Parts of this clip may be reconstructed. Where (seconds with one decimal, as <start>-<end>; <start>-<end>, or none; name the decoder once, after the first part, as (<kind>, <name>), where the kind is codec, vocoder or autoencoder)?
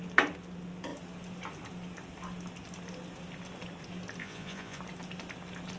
4.2-4.8 (vocoder, Vocos)